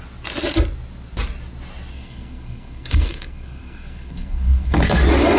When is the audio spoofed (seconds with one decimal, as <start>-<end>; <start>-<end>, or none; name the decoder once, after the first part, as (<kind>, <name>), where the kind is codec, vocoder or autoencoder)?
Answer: 1.9-4.8 (codec, SNAC)